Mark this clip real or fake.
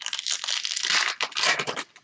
real